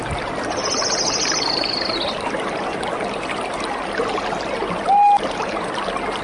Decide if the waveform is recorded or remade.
recorded